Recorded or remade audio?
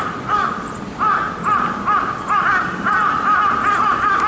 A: recorded